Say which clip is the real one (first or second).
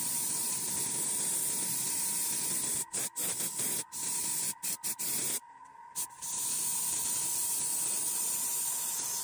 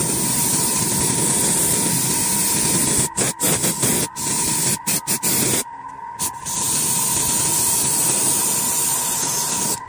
second